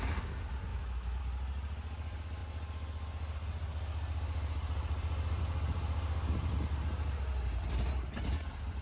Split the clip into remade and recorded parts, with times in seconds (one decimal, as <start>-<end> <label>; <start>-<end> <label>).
0.0-0.7 recorded; 0.7-1.2 remade; 1.2-8.8 recorded